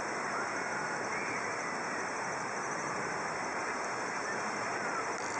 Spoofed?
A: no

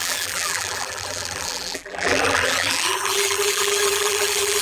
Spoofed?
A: yes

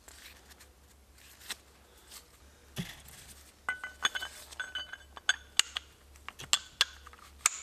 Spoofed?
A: no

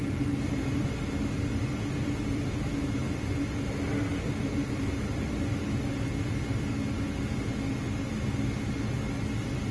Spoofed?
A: no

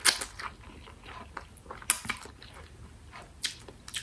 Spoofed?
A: no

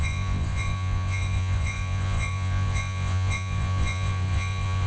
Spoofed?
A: yes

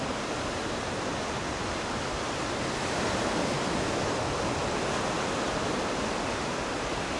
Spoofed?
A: no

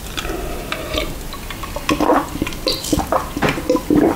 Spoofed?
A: no